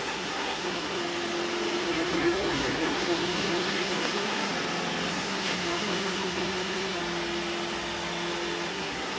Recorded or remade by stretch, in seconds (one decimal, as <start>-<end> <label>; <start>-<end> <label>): 0.0-1.0 remade; 1.0-1.8 recorded; 1.8-4.5 remade; 4.5-5.1 recorded; 5.1-7.0 remade; 7.0-8.7 recorded; 8.7-9.2 remade